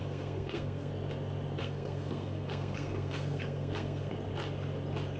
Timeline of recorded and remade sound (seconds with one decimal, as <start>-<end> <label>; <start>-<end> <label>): 0.0-0.9 remade; 0.9-1.6 recorded; 1.6-4.1 remade; 4.1-5.2 recorded